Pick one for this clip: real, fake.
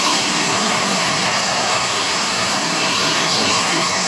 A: fake